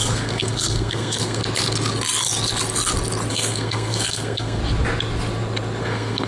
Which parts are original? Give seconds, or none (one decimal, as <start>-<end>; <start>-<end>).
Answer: 1.4-3.3; 4.6-5.8